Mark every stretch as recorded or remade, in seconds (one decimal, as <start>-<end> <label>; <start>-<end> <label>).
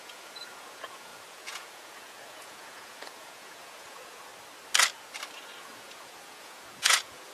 0.0-4.3 remade; 4.3-5.6 recorded; 5.6-7.3 remade